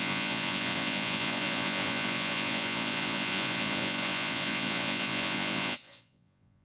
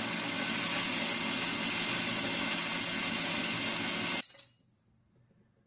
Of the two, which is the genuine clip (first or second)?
second